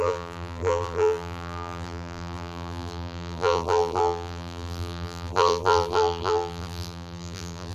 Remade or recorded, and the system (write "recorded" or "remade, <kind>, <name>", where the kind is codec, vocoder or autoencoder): remade, vocoder, BigVGAN v2